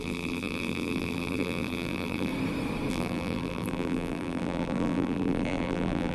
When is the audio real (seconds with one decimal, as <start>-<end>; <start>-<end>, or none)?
2.3-2.9